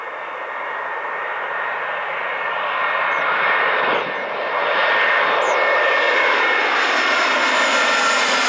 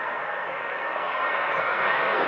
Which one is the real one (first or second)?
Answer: first